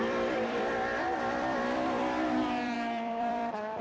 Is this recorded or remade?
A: remade